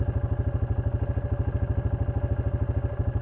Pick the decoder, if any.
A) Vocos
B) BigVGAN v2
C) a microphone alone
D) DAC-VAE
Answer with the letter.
C